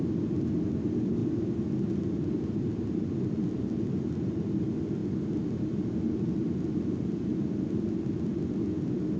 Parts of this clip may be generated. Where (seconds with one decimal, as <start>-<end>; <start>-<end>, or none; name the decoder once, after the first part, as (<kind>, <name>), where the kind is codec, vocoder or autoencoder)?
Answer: none